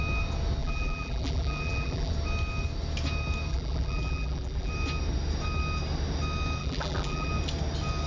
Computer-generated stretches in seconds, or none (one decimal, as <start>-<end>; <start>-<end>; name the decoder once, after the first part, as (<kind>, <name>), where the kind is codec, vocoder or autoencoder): 0.6-2.1 (vocoder, BigVGAN v2); 3.5-4.7; 6.6-7.3